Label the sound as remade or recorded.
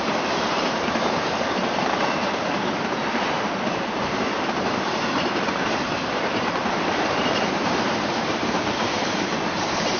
remade